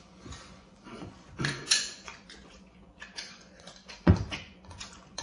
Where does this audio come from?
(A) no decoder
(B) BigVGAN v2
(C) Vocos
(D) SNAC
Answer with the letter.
C